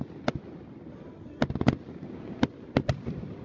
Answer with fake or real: real